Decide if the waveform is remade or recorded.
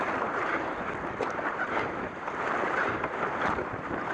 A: recorded